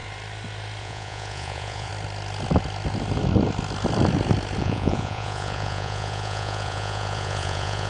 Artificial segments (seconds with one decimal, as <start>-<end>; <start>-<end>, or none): 0.8-1.9; 4.6-7.9